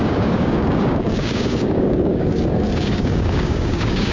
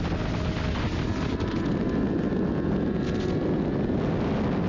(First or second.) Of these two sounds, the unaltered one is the second